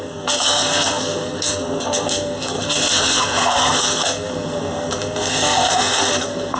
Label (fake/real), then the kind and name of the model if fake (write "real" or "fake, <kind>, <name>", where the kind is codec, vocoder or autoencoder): fake, codec, SNAC